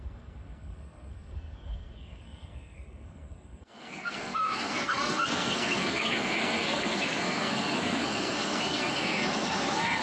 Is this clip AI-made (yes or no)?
yes